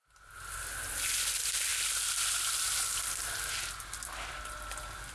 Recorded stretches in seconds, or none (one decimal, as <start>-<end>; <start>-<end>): 0.0-5.1